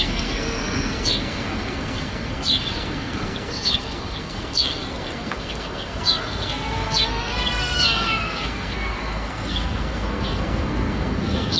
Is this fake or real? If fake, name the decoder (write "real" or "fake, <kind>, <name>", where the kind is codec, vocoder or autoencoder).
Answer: fake, codec, SNAC